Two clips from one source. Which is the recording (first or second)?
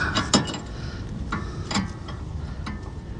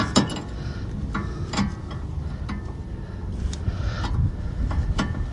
second